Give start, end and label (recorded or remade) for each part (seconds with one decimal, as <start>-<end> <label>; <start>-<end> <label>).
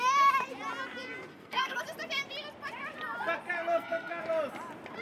0.0-1.3 recorded; 1.3-1.8 remade; 1.8-3.7 recorded; 3.7-4.2 remade; 4.2-5.0 recorded